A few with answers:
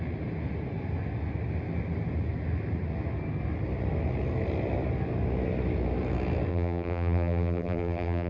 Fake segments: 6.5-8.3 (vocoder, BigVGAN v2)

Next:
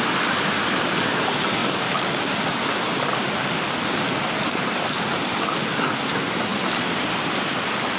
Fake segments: 1.6-2.4 (vocoder, BigVGAN v2); 6.5-7.2

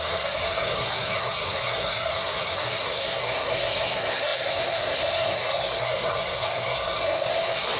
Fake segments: 0.0-7.8 (codec, SNAC)